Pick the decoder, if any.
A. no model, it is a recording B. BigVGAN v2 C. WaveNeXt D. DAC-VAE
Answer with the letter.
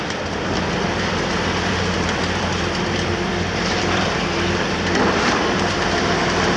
B